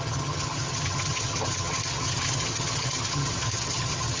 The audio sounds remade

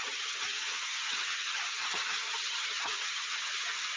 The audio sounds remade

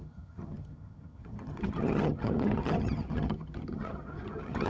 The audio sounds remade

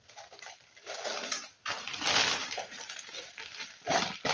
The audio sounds recorded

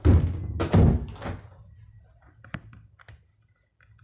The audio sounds recorded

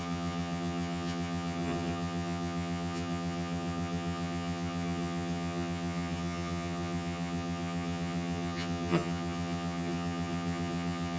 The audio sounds remade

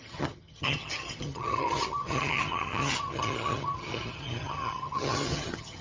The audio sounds remade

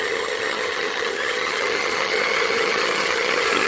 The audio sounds remade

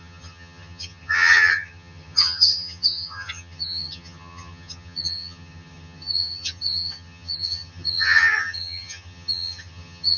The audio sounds remade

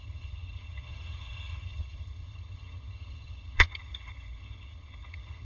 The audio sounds remade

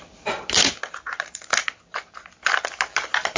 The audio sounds recorded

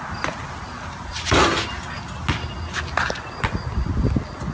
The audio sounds recorded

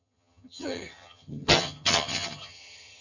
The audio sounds remade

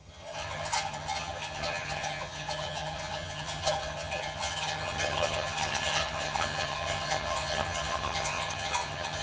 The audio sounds remade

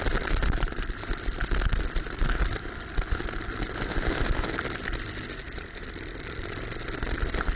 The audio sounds recorded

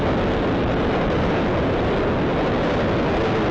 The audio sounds recorded